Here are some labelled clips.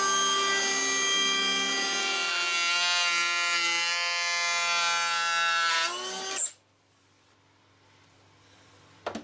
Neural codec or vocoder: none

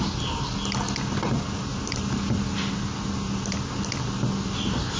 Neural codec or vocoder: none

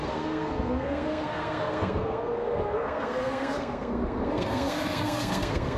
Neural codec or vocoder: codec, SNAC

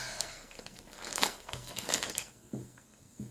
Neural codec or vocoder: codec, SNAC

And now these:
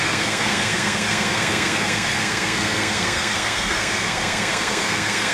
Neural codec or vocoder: codec, SNAC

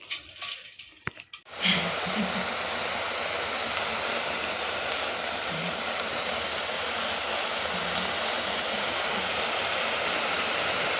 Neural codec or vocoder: none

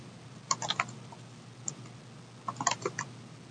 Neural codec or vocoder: none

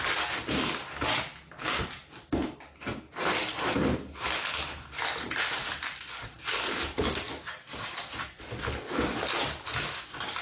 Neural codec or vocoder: none